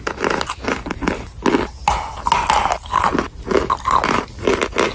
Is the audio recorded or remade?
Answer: recorded